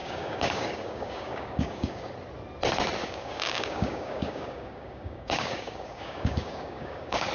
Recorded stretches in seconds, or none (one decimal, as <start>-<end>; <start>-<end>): 2.1-3.0